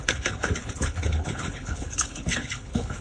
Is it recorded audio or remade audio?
remade